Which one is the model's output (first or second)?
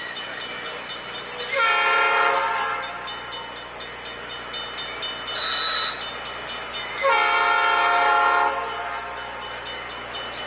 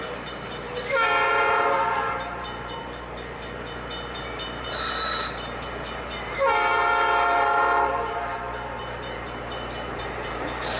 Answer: second